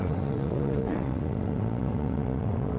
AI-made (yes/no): yes